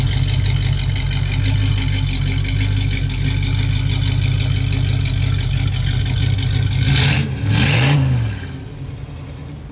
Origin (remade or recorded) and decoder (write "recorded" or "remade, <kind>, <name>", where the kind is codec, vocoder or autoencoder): recorded